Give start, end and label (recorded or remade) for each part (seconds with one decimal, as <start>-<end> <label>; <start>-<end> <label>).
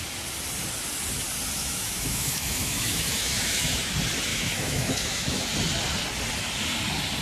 0.0-1.6 recorded; 1.6-3.9 remade; 3.9-4.3 recorded; 4.3-5.4 remade; 5.4-7.2 recorded